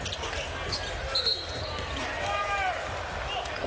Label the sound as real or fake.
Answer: real